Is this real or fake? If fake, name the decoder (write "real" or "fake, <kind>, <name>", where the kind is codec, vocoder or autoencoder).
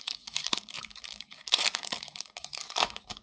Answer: fake, codec, DAC